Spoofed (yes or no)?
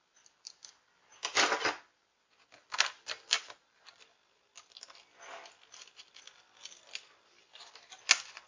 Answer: no